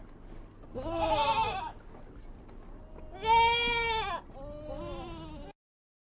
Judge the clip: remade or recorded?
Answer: recorded